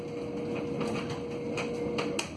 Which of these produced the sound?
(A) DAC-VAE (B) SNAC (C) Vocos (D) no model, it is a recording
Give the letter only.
D